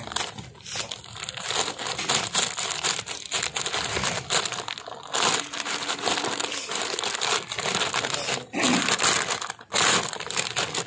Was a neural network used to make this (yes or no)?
no